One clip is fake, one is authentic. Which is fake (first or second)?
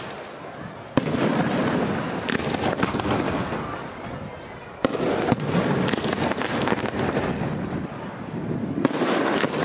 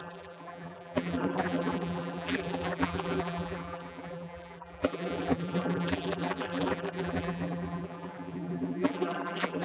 second